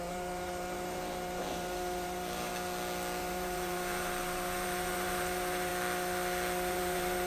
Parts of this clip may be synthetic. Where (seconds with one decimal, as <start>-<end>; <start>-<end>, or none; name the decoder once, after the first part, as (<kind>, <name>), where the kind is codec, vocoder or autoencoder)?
0.0-2.5 (vocoder, BigVGAN v2); 3.2-5.7; 6.7-7.3

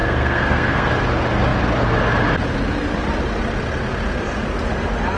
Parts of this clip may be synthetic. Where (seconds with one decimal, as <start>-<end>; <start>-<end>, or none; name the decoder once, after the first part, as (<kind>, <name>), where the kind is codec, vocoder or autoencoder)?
0.0-0.9 (codec, SNAC)

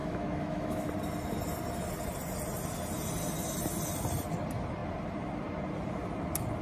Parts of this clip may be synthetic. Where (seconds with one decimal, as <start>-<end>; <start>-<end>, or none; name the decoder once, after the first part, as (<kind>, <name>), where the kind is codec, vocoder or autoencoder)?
0.0-0.9 (autoencoder, DAC-VAE)